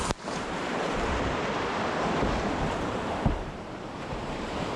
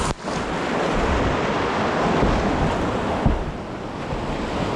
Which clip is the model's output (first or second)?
first